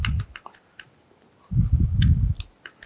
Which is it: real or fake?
real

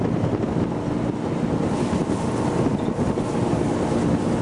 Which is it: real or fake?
real